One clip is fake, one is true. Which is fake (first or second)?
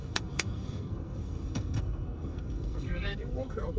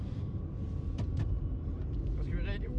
first